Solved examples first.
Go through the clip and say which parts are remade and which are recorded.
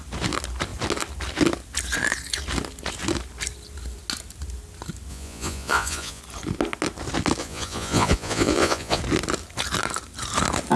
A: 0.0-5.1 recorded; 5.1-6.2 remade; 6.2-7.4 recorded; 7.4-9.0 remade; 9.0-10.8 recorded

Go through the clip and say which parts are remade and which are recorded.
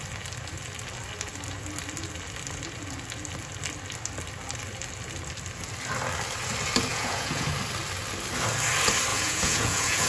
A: 0.0-6.9 recorded; 6.9-7.5 remade; 7.5-9.1 recorded; 9.1-10.1 remade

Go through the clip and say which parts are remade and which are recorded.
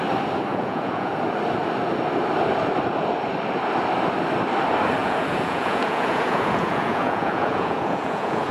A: 0.0-0.5 recorded; 0.5-1.1 remade; 1.1-5.0 recorded; 5.0-8.5 remade